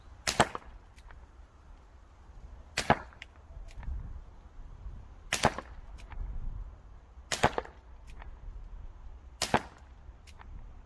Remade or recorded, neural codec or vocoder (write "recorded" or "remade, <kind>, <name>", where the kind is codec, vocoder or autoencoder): recorded